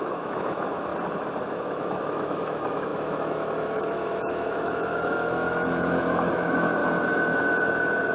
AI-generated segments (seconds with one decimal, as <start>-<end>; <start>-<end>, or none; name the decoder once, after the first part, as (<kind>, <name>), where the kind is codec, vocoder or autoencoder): 0.0-0.9 (autoencoder, DAC-VAE); 1.4-6.8